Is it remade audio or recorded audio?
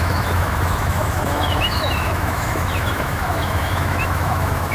remade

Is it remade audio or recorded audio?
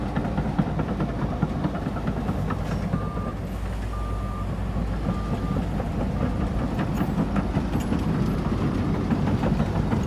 recorded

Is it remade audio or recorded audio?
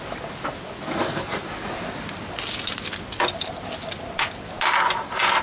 recorded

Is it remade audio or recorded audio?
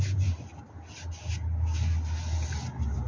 recorded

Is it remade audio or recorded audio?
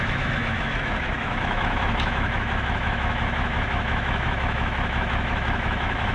remade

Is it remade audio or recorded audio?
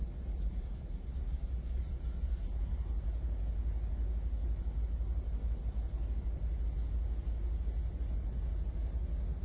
recorded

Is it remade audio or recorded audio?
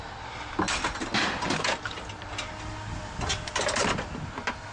recorded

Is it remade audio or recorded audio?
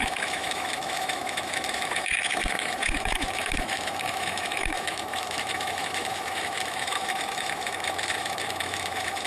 remade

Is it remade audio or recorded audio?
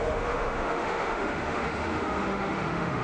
remade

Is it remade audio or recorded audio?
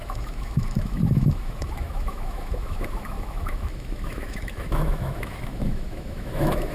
remade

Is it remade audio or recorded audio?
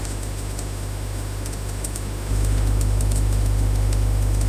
remade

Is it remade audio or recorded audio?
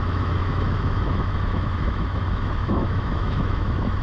remade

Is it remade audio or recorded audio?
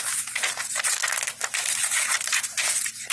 recorded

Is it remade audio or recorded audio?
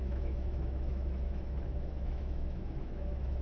remade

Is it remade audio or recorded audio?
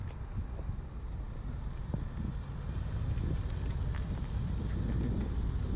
recorded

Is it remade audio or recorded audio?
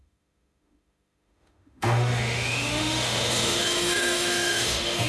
remade